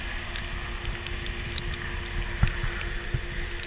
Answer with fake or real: real